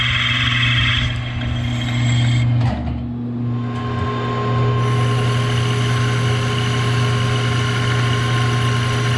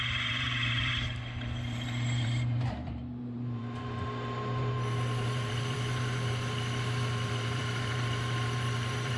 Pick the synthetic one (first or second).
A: second